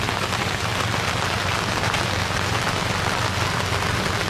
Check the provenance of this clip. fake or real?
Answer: real